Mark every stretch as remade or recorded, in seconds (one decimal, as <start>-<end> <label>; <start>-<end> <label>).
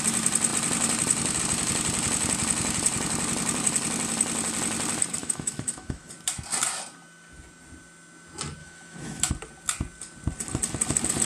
0.0-5.2 recorded; 5.2-6.1 remade; 6.1-8.6 recorded; 8.6-9.3 remade; 9.3-11.2 recorded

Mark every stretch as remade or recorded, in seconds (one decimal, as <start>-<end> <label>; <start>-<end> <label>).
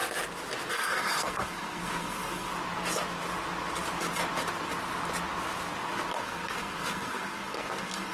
0.0-0.7 recorded; 0.7-2.5 remade; 2.5-6.1 recorded; 6.1-8.1 remade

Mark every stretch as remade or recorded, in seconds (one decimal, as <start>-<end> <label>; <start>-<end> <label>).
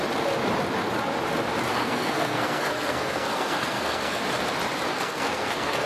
0.0-1.7 recorded; 1.7-4.2 remade; 4.2-4.9 recorded; 4.9-5.9 remade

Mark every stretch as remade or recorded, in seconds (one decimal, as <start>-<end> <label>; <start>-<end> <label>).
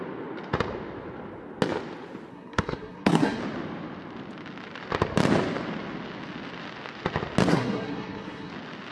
0.0-2.3 recorded; 2.3-3.4 remade; 3.4-7.5 recorded; 7.5-8.5 remade; 8.5-8.9 recorded